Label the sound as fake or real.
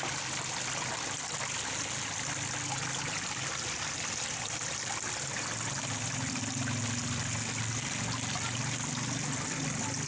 real